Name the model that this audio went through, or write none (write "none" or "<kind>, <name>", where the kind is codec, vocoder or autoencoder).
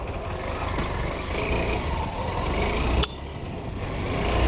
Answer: none